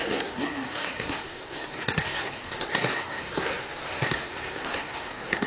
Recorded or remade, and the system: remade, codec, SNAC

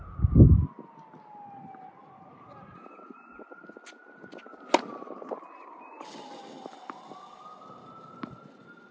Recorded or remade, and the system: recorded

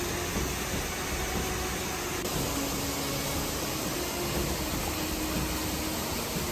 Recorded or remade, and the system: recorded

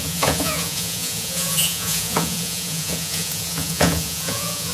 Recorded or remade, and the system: remade, vocoder, Vocos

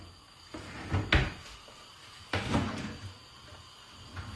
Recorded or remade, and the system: recorded